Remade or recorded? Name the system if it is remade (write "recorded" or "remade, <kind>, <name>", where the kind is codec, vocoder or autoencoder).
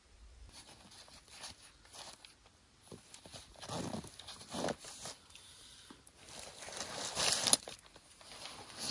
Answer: recorded